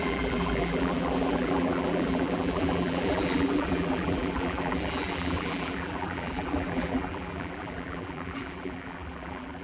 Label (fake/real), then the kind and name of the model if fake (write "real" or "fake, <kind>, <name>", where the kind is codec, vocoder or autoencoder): fake, vocoder, BigVGAN v2